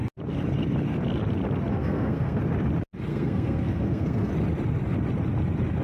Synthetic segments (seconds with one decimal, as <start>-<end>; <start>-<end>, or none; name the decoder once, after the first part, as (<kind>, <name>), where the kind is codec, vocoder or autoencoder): 1.7-2.4 (codec, SNAC); 3.1-4.3